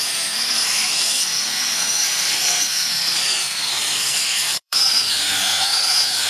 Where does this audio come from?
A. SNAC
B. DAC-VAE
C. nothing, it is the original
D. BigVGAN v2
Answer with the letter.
A